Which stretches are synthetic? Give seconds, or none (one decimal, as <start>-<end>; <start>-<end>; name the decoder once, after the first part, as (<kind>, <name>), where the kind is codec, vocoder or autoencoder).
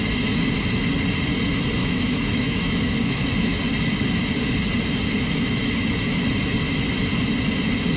1.8-3.6 (autoencoder, DAC-VAE)